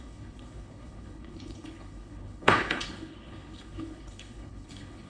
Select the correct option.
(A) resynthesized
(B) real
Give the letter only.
A